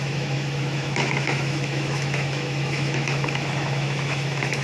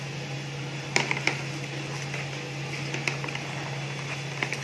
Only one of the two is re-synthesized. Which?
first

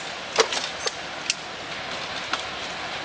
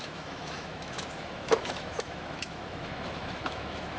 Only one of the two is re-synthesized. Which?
second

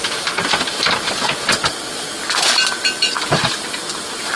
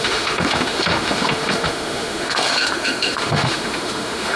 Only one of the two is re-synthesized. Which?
second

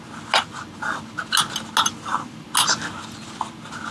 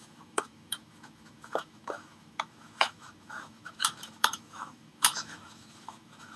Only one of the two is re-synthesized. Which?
second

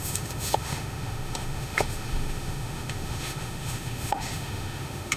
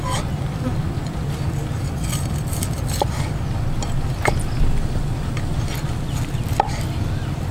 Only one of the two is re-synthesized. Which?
first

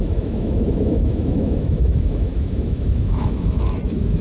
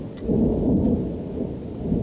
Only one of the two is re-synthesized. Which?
first